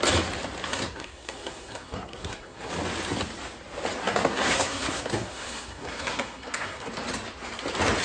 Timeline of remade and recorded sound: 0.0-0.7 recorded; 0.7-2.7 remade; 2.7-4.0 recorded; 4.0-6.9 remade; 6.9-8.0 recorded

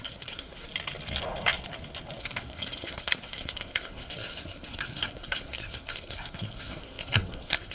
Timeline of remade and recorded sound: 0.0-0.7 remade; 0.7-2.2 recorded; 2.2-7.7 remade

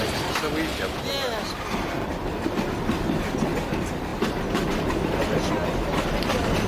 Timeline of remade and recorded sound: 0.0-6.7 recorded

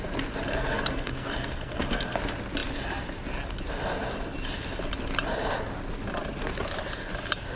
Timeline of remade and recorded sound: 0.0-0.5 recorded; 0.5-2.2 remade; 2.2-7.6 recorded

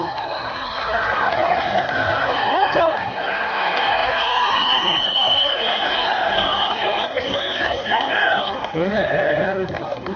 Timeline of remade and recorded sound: 0.0-10.2 remade

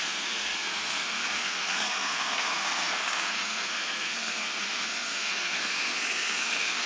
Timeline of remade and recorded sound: 0.0-6.9 remade